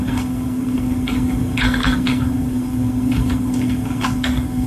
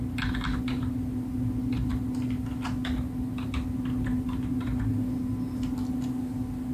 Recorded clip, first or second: second